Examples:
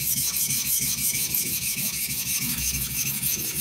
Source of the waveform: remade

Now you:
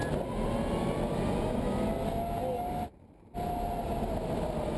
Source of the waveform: recorded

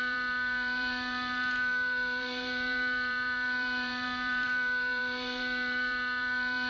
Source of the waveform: remade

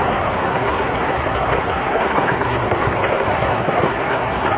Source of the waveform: remade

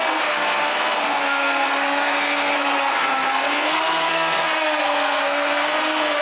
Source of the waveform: remade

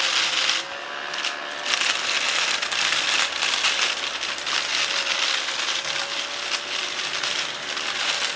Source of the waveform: recorded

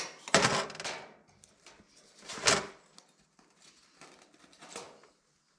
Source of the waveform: recorded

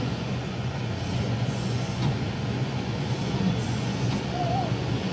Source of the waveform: remade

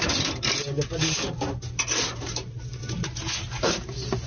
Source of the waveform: recorded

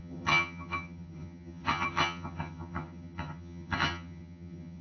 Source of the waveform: remade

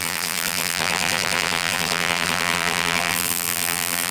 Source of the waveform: remade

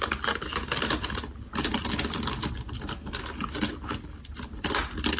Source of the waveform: recorded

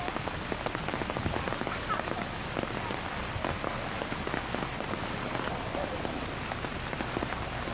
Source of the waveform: recorded